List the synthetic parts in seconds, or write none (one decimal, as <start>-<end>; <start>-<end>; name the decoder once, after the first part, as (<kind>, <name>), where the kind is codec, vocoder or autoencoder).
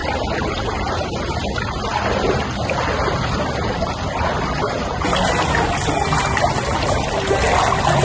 none